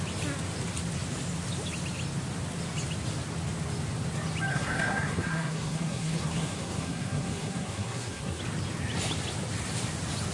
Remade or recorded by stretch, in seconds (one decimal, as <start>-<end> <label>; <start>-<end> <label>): 0.0-4.5 recorded; 4.5-8.4 remade; 8.4-10.3 recorded